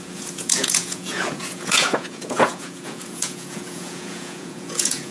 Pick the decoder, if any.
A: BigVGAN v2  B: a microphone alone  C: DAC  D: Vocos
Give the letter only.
D